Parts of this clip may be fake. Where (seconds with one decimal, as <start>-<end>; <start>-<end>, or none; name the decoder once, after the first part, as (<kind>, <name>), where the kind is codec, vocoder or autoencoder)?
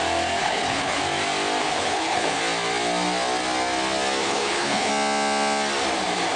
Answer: 0.4-1.0 (codec, HILCodec); 1.6-2.4; 4.2-4.9